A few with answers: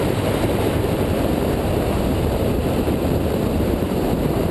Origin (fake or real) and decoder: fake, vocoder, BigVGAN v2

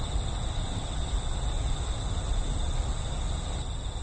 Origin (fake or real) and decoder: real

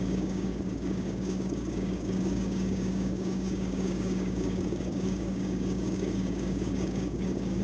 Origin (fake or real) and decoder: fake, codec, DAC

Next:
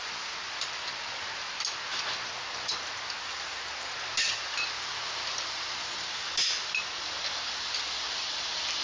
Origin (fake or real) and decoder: real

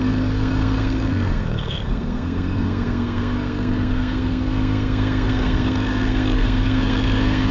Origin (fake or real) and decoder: fake, codec, SNAC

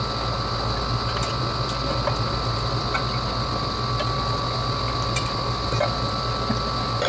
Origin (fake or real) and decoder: real